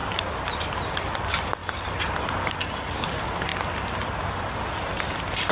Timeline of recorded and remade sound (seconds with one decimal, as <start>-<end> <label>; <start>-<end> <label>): 0.0-1.0 recorded; 1.0-5.5 remade